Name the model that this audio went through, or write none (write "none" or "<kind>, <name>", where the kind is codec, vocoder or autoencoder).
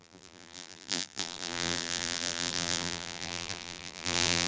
vocoder, BigVGAN v2